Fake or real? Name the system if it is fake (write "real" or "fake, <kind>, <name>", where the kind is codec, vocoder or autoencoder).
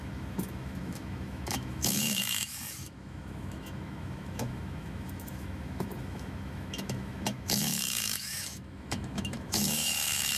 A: fake, autoencoder, DAC-VAE